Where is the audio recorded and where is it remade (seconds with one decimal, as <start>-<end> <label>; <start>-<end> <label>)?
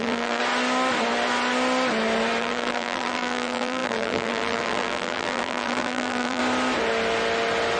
0.0-0.4 remade; 0.4-2.4 recorded; 2.4-6.4 remade; 6.4-7.8 recorded